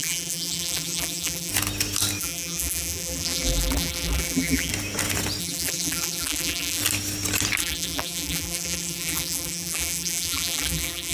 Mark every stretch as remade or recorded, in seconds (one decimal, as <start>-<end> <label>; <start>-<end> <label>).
0.0-1.5 remade; 1.5-2.2 recorded; 2.2-4.7 remade; 4.7-5.4 recorded; 5.4-6.8 remade; 6.8-7.6 recorded; 7.6-11.1 remade

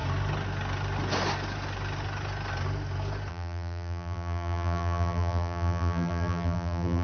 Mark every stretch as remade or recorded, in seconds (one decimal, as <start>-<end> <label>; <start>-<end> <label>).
0.0-3.3 recorded; 3.3-7.0 remade

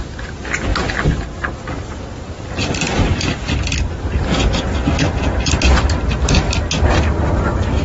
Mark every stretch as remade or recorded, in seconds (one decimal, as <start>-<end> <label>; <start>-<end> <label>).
0.0-2.6 recorded; 2.6-5.8 remade; 5.8-7.8 recorded

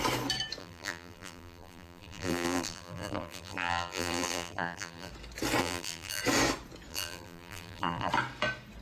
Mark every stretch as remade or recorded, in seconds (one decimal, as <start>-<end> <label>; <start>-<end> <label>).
0.0-0.6 recorded; 0.6-5.1 remade; 5.1-5.6 recorded; 5.6-6.2 remade; 6.2-6.9 recorded; 6.9-8.1 remade; 8.1-8.8 recorded

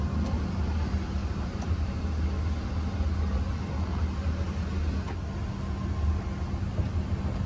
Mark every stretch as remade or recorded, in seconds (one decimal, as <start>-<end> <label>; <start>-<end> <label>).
0.0-1.2 recorded; 1.2-2.0 remade; 2.0-4.2 recorded; 4.2-4.8 remade; 4.8-7.5 recorded

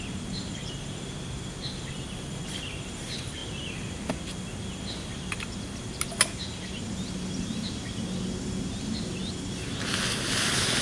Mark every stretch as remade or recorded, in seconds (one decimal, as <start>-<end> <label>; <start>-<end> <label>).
0.0-10.8 recorded

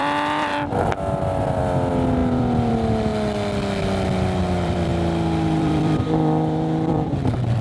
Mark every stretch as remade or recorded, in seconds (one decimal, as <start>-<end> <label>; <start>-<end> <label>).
0.0-0.5 remade; 0.5-1.1 recorded; 1.1-3.1 remade; 3.1-4.4 recorded; 4.4-4.9 remade; 4.9-5.6 recorded; 5.6-7.6 remade

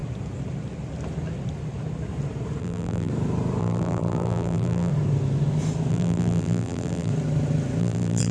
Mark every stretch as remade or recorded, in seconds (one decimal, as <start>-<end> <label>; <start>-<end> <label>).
0.0-2.6 recorded; 2.6-3.1 remade; 3.1-3.6 recorded; 3.6-4.9 remade; 4.9-5.9 recorded; 5.9-7.1 remade; 7.1-7.8 recorded; 7.8-8.3 remade